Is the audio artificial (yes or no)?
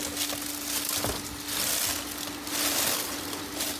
no